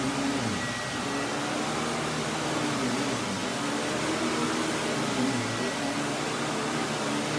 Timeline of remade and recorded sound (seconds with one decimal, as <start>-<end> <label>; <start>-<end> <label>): 0.0-7.4 recorded